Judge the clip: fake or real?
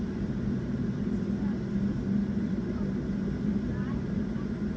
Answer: fake